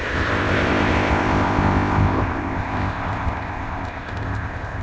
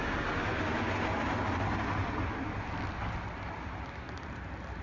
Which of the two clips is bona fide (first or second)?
second